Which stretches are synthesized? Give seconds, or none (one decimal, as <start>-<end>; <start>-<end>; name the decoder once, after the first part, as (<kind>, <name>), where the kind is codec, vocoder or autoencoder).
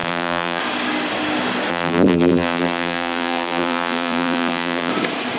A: 0.0-0.6 (vocoder, BigVGAN v2); 1.7-4.9